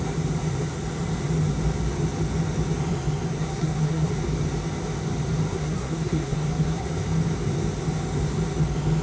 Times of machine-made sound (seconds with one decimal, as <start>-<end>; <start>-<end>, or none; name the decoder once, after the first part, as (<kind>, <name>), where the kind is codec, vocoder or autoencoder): 3.5-4.1 (codec, SNAC); 5.5-6.9